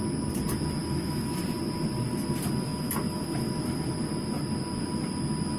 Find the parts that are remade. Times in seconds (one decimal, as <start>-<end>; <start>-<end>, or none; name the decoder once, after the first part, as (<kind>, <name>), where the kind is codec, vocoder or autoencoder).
0.8-1.4 (autoencoder, DAC-VAE)